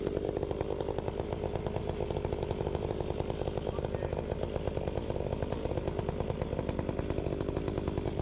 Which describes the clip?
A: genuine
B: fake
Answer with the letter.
A